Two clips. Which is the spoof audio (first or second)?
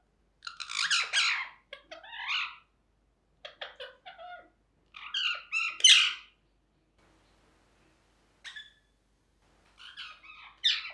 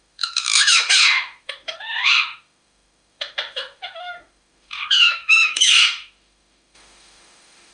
second